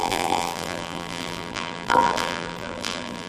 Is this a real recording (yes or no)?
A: no